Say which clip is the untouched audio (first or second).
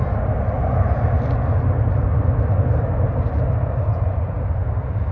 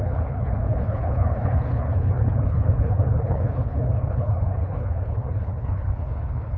first